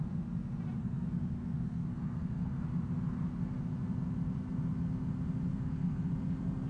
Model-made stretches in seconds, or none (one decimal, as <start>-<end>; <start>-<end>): 0.8-2.6; 5.5-6.1